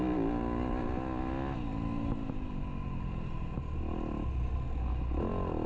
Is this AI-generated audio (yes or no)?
no